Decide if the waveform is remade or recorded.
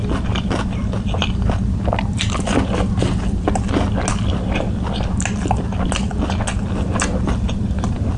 recorded